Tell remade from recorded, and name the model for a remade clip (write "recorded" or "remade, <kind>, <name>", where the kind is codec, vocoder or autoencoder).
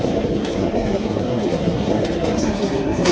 remade, codec, SNAC